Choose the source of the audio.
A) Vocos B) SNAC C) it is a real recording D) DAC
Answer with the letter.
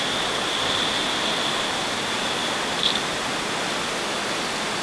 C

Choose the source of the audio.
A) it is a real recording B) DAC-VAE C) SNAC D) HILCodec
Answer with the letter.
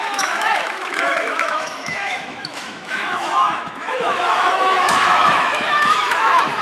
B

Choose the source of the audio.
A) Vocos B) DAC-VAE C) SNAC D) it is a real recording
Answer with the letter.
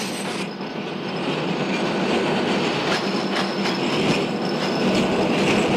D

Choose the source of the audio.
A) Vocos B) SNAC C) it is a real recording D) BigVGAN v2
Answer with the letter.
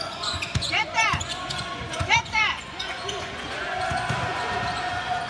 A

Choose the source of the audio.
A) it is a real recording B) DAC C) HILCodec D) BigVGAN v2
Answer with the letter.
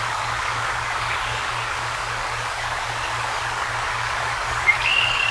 B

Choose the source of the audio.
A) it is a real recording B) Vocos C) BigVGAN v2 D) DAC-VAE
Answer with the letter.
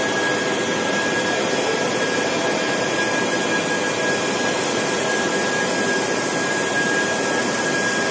A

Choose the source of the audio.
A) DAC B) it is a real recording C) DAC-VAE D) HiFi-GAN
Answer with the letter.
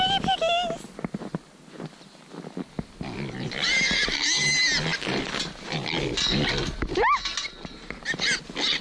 B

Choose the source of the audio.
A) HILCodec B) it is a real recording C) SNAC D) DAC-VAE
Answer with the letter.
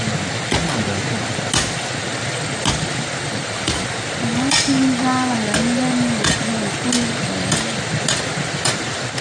B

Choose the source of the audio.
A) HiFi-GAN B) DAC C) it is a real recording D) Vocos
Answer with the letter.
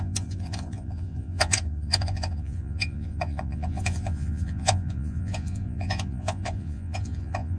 D